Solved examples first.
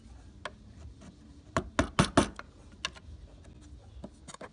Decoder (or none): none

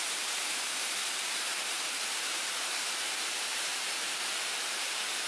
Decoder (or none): vocoder, BigVGAN v2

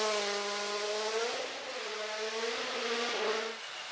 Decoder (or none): none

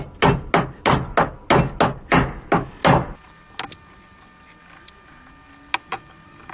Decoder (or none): none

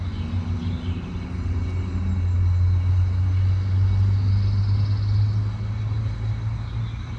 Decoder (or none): none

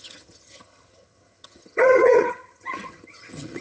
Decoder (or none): vocoder, HiFi-GAN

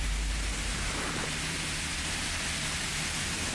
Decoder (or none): vocoder, BigVGAN v2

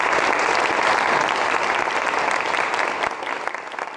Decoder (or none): none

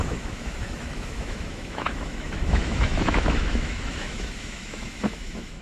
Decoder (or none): autoencoder, DAC-VAE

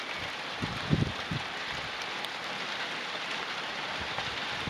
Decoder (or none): vocoder, BigVGAN v2